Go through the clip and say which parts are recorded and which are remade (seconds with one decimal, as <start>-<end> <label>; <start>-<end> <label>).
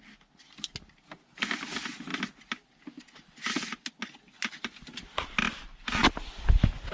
0.0-6.9 recorded